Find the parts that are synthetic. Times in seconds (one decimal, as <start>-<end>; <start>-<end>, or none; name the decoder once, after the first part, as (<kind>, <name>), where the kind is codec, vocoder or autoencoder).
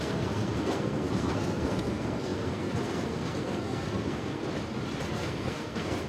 0.0-4.4 (codec, SNAC); 5.1-6.1